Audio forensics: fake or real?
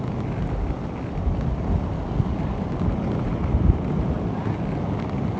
real